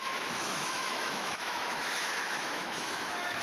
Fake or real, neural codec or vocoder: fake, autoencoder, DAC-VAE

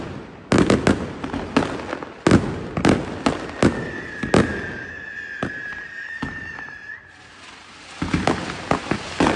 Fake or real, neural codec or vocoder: real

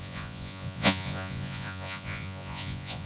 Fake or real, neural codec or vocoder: fake, vocoder, Vocos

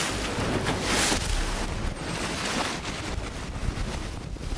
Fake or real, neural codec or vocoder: real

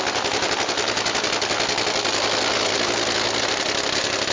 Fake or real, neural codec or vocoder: real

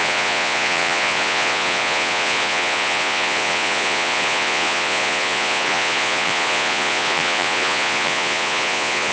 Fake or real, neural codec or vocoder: fake, vocoder, Vocos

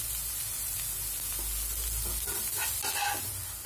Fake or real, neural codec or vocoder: real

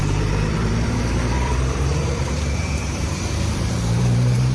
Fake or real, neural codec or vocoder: fake, vocoder, BigVGAN v2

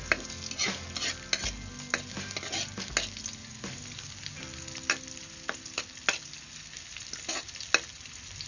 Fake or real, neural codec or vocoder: real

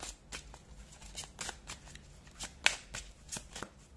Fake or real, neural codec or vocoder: real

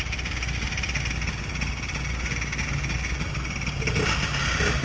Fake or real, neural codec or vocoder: real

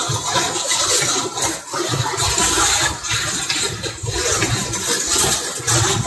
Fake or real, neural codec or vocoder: real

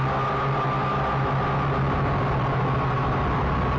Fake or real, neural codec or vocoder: real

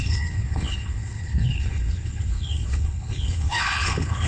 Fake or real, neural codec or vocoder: fake, codec, HILCodec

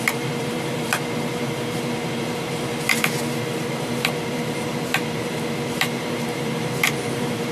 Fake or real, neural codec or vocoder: fake, vocoder, BigVGAN v2